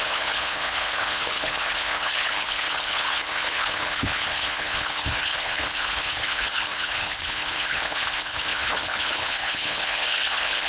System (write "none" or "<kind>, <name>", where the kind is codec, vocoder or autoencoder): codec, HILCodec